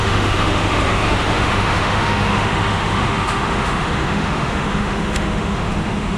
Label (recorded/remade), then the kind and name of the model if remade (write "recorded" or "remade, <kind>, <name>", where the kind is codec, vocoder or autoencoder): remade, autoencoder, DAC-VAE